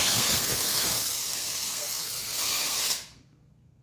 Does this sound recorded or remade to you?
remade